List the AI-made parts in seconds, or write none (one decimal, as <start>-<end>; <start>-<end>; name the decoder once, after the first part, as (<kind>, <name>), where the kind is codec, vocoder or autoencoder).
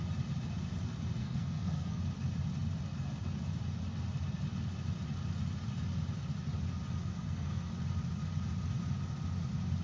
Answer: 1.2-2.0 (codec, SNAC); 7.0-7.7